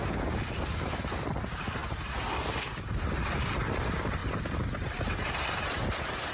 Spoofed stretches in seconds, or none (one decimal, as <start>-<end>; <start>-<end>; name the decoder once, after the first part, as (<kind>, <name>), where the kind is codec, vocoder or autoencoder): 4.2-5.4 (vocoder, BigVGAN v2)